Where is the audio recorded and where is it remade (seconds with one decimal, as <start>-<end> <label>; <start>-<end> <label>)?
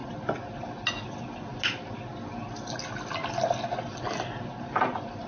0.0-5.3 recorded